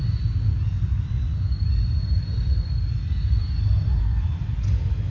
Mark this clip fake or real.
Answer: real